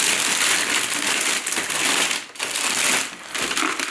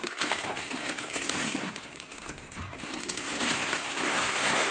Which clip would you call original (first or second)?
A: first